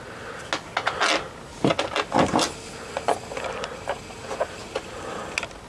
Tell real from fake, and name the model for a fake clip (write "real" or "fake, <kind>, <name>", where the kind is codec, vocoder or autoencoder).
real